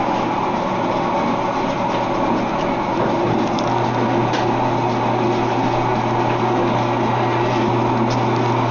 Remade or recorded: recorded